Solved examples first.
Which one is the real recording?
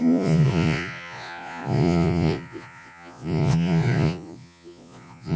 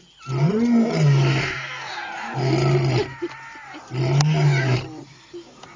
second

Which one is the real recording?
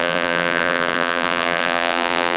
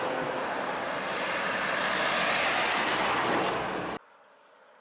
second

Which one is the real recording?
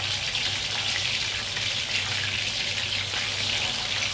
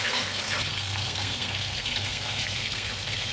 first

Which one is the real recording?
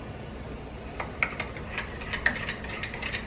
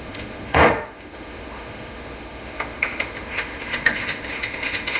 first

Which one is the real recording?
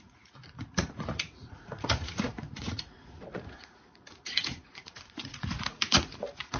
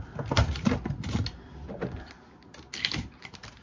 second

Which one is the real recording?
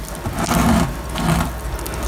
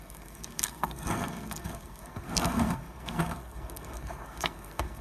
first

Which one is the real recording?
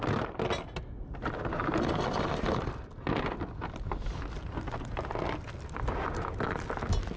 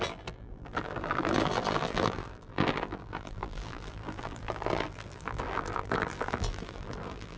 first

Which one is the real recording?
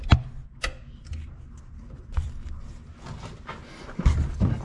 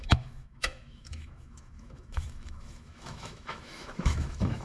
first